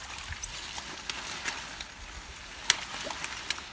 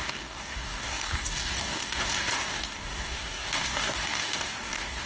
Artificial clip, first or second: second